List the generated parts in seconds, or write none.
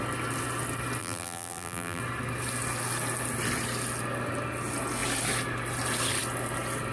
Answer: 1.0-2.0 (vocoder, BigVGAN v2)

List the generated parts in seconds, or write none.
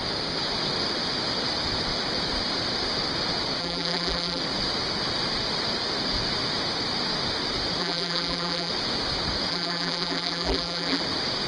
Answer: 3.6-4.4 (vocoder, BigVGAN v2); 7.8-8.7; 9.5-11.0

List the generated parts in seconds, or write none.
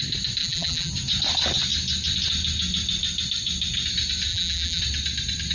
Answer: 0.4-0.9 (vocoder, BigVGAN v2); 4.3-4.8